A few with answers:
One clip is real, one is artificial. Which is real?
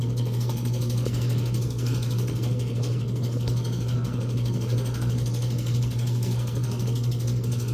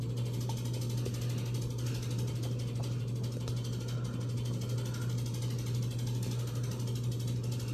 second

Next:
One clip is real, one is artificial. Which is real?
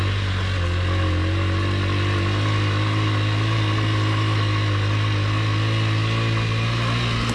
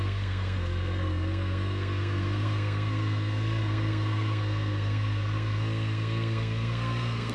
first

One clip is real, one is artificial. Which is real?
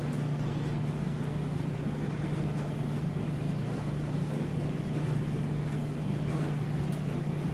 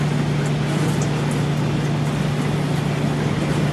second